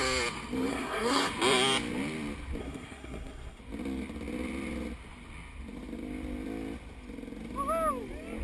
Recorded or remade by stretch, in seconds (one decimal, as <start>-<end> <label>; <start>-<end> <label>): 0.0-0.7 recorded; 0.7-1.3 remade; 1.3-2.6 recorded; 2.6-3.6 remade; 3.6-8.4 recorded